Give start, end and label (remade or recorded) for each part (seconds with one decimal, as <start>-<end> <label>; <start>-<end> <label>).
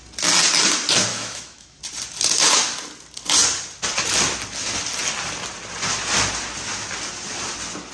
0.0-1.1 recorded; 1.1-1.8 remade; 1.8-7.9 recorded